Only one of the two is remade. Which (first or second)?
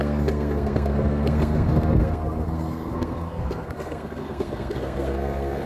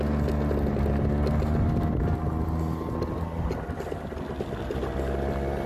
first